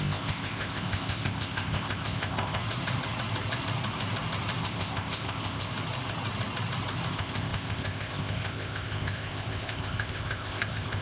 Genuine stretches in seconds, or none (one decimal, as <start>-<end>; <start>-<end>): 2.6-4.6; 5.7-7.1